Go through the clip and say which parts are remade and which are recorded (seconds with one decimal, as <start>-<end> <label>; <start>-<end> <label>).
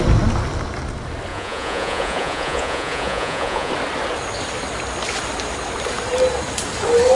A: 0.0-1.3 recorded; 1.3-3.7 remade; 3.7-7.2 recorded